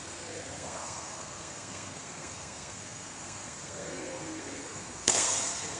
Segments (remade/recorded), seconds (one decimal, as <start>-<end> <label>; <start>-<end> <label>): 0.0-5.8 remade